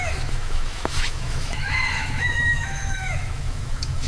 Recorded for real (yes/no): no